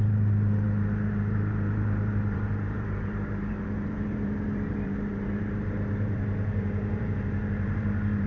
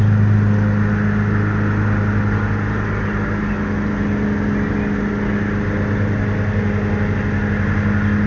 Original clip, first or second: second